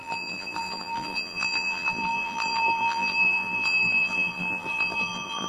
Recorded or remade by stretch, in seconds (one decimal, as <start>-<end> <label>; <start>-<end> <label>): 0.0-5.5 remade